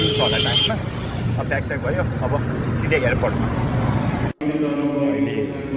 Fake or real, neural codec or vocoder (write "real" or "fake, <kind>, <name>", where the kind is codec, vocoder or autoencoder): real